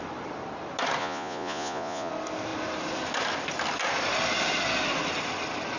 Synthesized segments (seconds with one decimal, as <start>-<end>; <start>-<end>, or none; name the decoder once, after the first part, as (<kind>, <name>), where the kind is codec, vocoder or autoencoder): 1.0-2.1 (vocoder, Vocos)

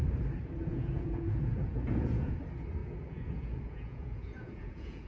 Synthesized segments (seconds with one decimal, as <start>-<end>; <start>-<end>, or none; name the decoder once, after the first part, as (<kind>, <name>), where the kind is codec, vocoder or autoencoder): 0.6-2.4 (vocoder, Vocos); 2.8-5.1

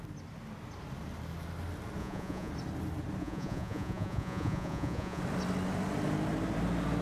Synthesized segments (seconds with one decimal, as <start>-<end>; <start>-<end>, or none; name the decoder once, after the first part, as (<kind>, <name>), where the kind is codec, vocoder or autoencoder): 2.0-2.5 (vocoder, Vocos); 3.2-5.2

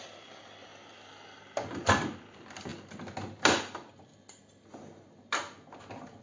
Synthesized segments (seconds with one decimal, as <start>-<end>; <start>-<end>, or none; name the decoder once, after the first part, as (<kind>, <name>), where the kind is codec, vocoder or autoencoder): none

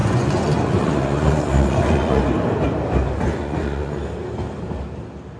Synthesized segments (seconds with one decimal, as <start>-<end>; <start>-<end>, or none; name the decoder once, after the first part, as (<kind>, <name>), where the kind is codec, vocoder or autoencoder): 0.0-2.2 (vocoder, Vocos); 3.3-4.0

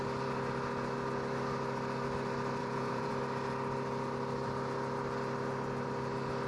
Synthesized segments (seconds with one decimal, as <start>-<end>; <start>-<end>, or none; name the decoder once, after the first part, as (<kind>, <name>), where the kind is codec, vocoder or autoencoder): 2.6-3.1 (vocoder, Vocos)

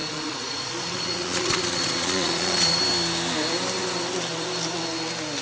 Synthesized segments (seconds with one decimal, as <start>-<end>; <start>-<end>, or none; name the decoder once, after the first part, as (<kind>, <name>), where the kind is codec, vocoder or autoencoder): 0.0-2.8 (vocoder, Vocos)

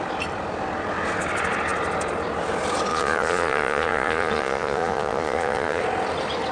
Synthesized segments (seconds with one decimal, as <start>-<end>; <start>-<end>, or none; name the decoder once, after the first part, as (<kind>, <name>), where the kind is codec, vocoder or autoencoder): 2.9-5.8 (vocoder, Vocos)